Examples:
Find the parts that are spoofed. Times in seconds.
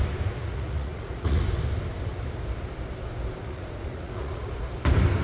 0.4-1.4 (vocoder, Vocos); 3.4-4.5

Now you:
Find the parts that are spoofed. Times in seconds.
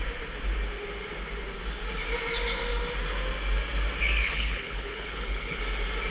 4.2-5.6 (codec, HILCodec)